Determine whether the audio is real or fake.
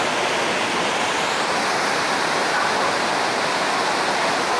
real